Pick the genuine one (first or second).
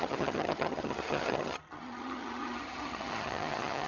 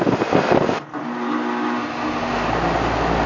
second